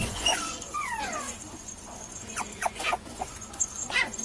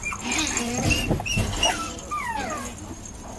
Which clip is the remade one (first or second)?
first